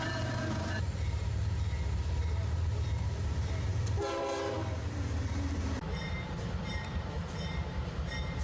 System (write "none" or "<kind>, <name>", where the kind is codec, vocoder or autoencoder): vocoder, BigVGAN v2